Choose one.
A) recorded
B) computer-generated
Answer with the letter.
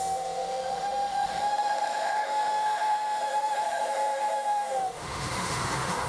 B